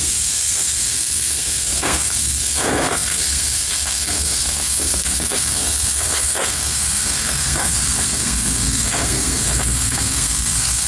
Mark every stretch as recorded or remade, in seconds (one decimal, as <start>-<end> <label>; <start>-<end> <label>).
0.0-10.9 remade